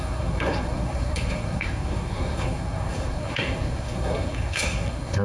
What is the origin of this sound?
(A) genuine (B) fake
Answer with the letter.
B